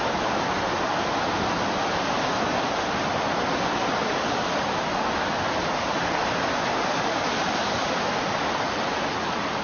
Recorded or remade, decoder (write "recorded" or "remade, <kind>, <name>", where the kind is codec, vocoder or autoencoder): recorded